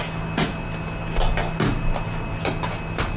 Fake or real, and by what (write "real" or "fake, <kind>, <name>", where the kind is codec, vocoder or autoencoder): real